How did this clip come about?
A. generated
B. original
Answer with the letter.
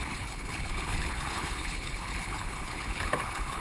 A